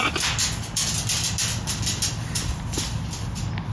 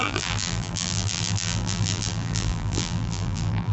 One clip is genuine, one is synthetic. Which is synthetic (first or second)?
second